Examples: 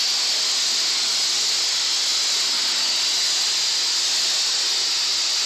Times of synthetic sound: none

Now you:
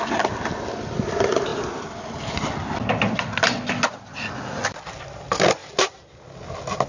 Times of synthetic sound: none

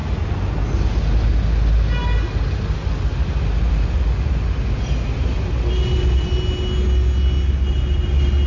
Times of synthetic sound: none

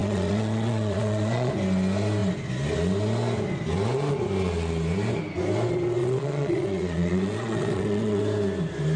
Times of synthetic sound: 0.0-1.5 (vocoder, Vocos); 6.0-8.2

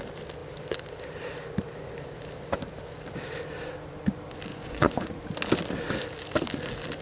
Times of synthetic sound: 4.5-5.1 (vocoder, Vocos)